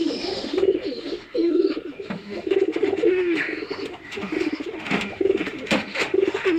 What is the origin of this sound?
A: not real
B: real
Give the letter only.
A